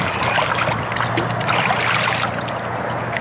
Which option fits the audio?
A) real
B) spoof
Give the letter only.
A